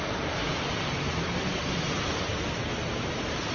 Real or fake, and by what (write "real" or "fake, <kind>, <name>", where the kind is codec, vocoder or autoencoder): real